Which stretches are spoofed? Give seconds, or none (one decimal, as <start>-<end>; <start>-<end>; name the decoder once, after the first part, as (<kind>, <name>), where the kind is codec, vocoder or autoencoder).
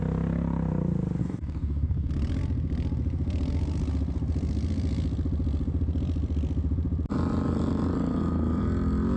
1.2-2.1 (codec, DAC)